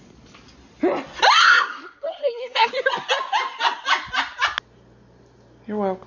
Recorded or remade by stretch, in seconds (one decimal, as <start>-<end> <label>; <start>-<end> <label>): 0.0-1.4 recorded; 1.4-2.7 remade; 2.7-6.1 recorded